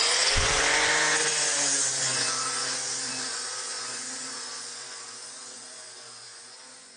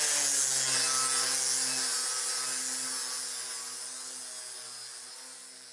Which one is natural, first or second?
second